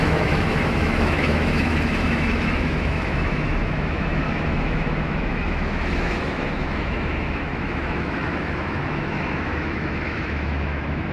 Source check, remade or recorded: remade